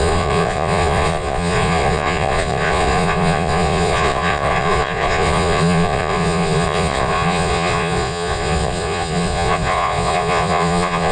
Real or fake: fake